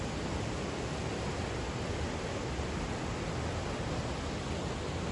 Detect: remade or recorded recorded